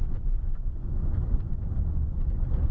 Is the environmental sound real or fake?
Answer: fake